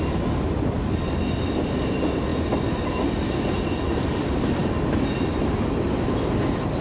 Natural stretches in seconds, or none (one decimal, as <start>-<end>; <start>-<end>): 0.0-6.8